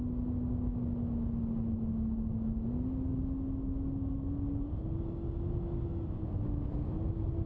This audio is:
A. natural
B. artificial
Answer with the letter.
A